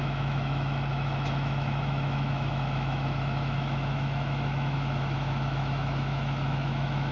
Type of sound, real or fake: fake